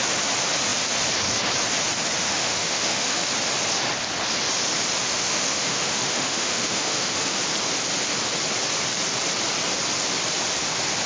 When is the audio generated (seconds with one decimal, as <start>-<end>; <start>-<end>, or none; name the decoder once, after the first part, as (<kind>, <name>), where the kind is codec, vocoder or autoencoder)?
2.2-3.3 (autoencoder, DAC-VAE); 5.0-7.4